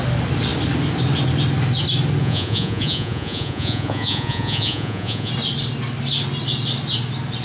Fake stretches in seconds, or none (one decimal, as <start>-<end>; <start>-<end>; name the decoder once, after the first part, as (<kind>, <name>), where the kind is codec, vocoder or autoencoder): 2.2-5.3 (vocoder, Vocos)